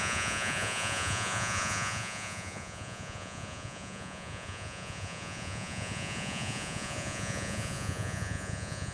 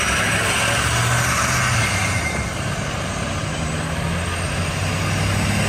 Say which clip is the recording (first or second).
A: second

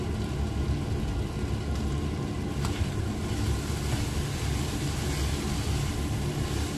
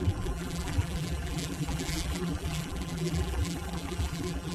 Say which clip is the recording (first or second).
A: first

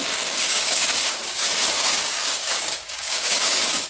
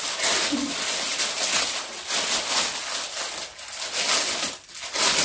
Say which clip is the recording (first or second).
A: second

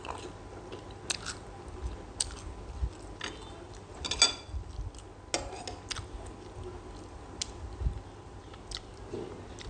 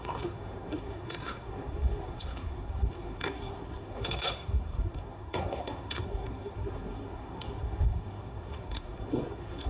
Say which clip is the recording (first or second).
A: first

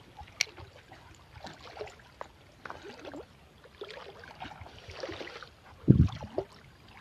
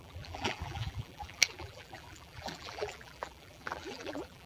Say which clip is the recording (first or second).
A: first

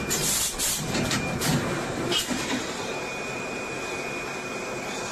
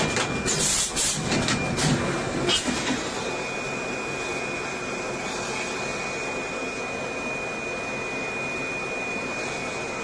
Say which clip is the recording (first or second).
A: second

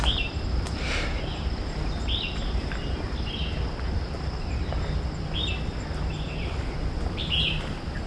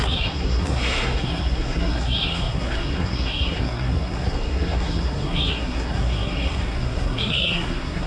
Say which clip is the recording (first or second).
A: first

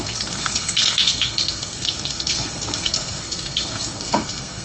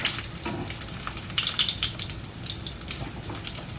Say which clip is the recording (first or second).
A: second